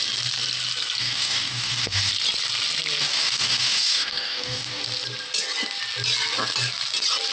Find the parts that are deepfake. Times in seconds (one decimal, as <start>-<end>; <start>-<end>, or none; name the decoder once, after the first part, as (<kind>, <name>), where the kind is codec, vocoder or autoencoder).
1.0-2.1 (codec, DAC); 3.0-4.8